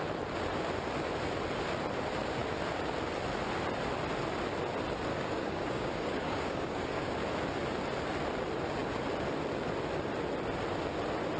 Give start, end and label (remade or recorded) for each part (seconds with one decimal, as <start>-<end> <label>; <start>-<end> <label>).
0.0-5.1 recorded; 5.1-7.1 remade; 7.1-11.4 recorded